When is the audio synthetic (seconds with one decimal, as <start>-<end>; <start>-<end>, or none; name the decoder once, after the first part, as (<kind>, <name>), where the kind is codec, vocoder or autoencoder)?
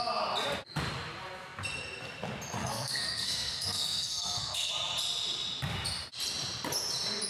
2.6-4.7 (codec, SNAC)